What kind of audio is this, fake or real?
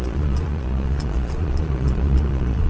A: fake